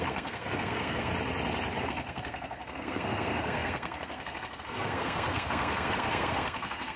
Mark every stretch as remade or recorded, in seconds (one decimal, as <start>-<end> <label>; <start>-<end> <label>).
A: 0.0-1.1 remade; 1.1-1.8 recorded; 1.8-7.0 remade